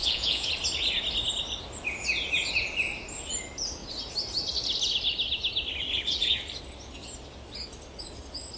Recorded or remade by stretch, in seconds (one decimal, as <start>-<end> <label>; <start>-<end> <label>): 0.0-0.5 remade; 0.5-8.6 recorded